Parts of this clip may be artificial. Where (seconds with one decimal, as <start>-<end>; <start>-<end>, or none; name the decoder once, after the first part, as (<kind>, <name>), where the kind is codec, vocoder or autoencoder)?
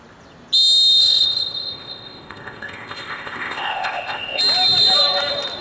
1.0-4.4 (codec, ZipCodec)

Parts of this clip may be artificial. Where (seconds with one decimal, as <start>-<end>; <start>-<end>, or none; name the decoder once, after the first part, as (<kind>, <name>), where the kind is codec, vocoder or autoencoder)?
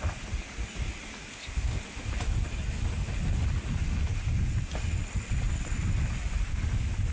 1.3-1.8 (codec, ZipCodec)